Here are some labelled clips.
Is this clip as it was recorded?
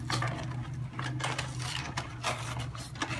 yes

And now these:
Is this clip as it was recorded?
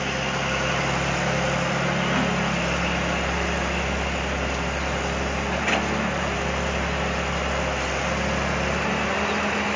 yes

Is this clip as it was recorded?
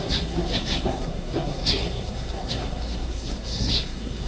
no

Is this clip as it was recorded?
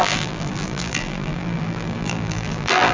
no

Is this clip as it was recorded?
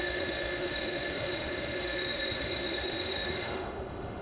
no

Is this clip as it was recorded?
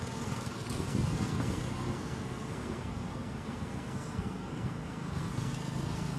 no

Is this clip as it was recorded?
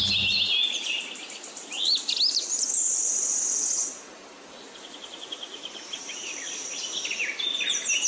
yes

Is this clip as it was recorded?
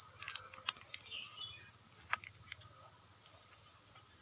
yes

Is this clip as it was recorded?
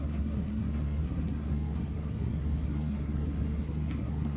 no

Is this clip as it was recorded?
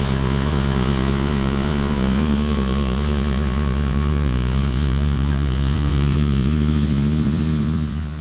no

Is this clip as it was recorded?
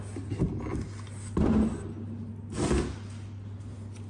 yes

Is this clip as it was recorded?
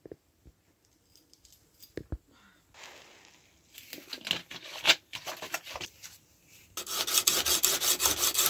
yes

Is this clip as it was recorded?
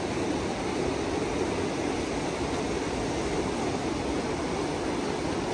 yes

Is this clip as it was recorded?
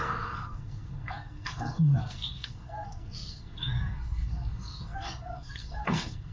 no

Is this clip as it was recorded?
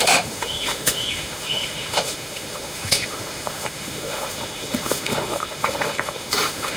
no